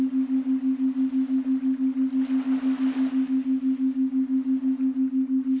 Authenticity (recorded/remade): recorded